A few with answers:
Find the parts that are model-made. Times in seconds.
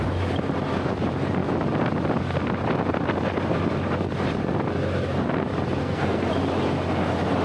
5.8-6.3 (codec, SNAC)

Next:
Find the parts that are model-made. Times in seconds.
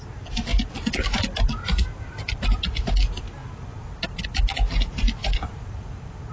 none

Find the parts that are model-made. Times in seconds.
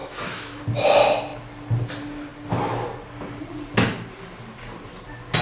0.0-0.6 (autoencoder, DAC-VAE)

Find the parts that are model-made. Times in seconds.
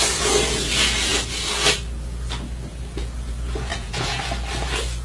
3.7-4.2 (vocoder, Vocos)